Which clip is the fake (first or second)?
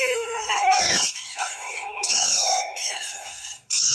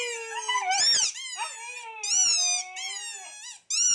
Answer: first